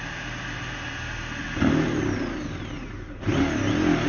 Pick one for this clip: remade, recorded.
recorded